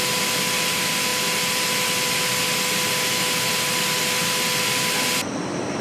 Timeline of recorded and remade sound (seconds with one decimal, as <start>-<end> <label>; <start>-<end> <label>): 0.0-5.8 recorded